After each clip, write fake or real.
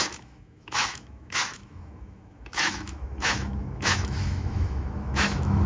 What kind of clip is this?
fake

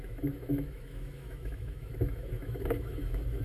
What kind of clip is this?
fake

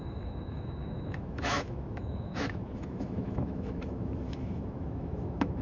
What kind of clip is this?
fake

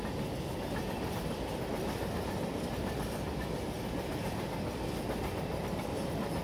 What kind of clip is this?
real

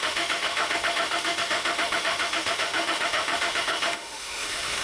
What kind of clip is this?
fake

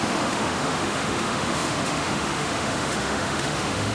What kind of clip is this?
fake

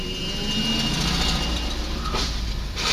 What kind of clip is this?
real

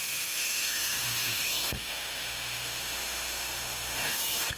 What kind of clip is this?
fake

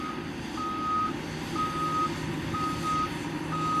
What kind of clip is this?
real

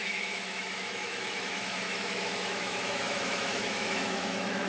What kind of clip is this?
fake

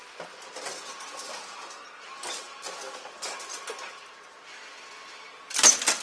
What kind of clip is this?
real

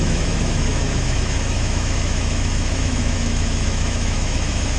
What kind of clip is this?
fake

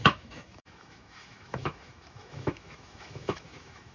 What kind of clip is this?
fake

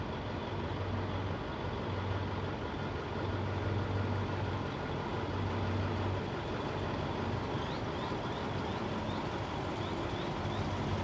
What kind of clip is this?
real